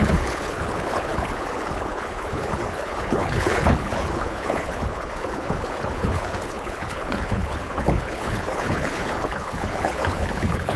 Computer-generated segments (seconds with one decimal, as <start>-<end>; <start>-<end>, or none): 0.0-10.8